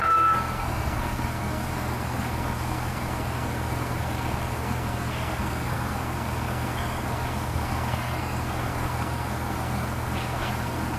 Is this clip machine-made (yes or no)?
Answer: yes